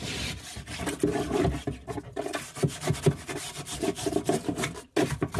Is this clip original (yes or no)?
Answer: yes